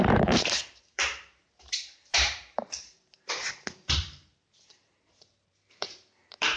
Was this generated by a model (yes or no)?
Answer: yes